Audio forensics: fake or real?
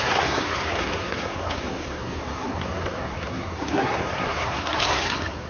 fake